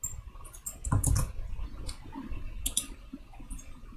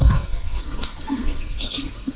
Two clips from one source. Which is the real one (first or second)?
first